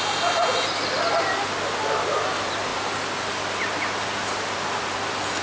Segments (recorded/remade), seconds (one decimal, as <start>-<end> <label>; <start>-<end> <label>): 0.0-5.4 recorded